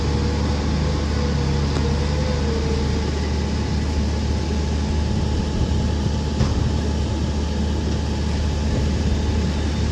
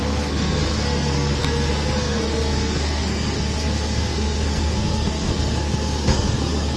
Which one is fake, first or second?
second